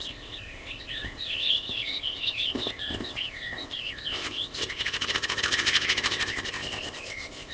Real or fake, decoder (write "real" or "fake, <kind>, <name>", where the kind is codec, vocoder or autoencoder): fake, codec, ZipCodec